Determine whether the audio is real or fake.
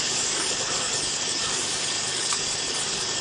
fake